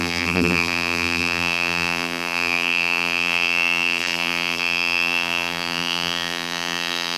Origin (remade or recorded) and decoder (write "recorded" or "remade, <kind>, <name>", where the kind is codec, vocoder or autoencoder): remade, vocoder, BigVGAN v2